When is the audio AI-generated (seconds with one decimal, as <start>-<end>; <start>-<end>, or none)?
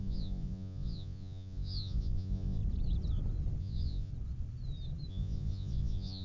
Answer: 0.0-2.6; 3.6-4.1; 5.1-6.2